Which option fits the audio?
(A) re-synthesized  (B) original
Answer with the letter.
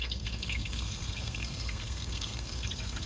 A